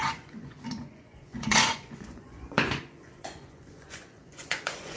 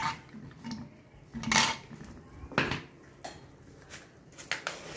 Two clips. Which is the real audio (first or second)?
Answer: second